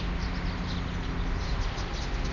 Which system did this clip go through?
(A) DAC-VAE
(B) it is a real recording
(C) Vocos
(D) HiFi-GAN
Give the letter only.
B